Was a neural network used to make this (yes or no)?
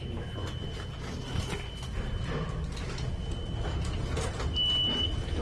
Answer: no